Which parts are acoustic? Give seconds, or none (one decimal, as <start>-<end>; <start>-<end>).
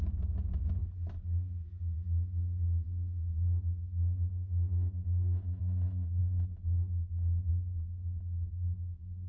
0.8-5.6; 6.2-7.5